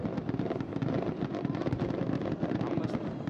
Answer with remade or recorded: remade